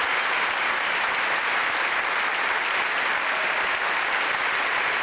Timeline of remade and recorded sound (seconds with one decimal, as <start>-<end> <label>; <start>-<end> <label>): 0.0-5.0 recorded